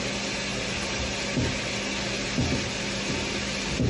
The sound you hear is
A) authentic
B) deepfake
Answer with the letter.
A